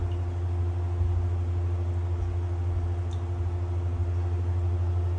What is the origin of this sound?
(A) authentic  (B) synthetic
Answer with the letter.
A